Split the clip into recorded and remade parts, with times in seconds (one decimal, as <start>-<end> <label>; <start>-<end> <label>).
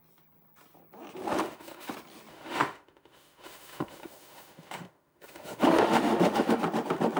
0.0-1.4 recorded; 1.4-1.9 remade; 1.9-2.3 recorded; 2.3-6.6 remade; 6.6-7.2 recorded